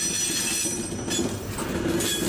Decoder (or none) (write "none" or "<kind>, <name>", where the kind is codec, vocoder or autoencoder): none